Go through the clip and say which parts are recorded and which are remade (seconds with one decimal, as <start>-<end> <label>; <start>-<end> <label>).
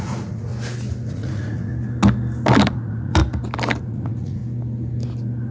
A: 0.0-0.5 remade; 0.5-1.1 recorded; 1.1-1.7 remade; 1.7-2.6 recorded; 2.6-3.2 remade; 3.2-3.8 recorded; 3.8-4.4 remade; 4.4-5.5 recorded